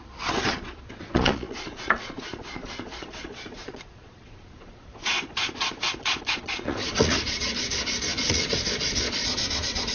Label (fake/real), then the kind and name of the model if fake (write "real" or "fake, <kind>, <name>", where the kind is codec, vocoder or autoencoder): fake, vocoder, Vocos